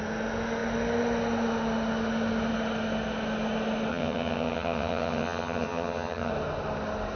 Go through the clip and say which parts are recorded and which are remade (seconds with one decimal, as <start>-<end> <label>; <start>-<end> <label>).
0.0-3.9 recorded; 3.9-6.3 remade; 6.3-7.2 recorded